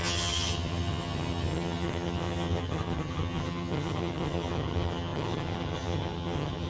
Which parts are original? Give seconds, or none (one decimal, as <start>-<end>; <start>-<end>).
none